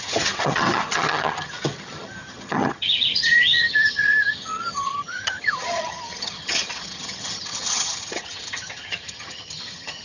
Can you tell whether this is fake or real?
fake